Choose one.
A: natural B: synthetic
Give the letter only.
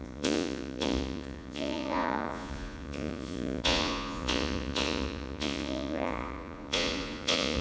B